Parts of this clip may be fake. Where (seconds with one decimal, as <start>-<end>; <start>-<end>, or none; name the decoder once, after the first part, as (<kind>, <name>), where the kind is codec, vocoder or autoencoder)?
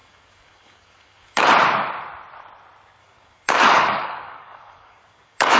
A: 0.0-1.5 (codec, DAC); 3.0-5.6